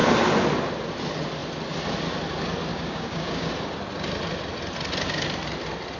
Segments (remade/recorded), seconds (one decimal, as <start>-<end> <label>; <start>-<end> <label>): 0.0-2.7 recorded; 2.7-3.5 remade; 3.5-6.0 recorded